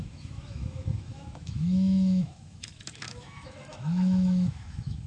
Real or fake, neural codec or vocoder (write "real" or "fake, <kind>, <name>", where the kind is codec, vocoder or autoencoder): fake, autoencoder, DAC-VAE